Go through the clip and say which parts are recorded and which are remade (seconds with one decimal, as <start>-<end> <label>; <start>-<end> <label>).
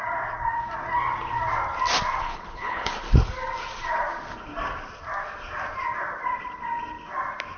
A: 0.0-2.2 recorded; 2.2-2.9 remade; 2.9-7.6 recorded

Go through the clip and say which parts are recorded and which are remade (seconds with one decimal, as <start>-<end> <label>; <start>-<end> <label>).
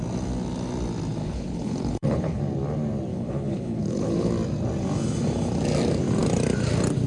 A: 0.0-1.2 recorded; 1.2-2.4 remade; 2.4-3.1 recorded; 3.1-4.3 remade; 4.3-7.1 recorded